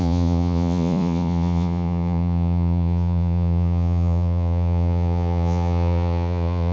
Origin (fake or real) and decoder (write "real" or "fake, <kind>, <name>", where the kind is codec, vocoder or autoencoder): fake, vocoder, Vocos